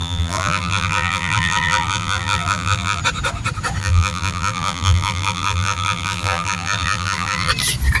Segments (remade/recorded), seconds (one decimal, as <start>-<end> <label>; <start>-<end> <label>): 0.0-3.0 remade; 3.0-3.8 recorded; 3.8-7.5 remade; 7.5-8.0 recorded